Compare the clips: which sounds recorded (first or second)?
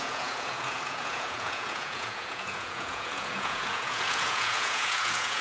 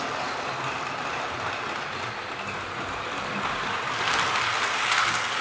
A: second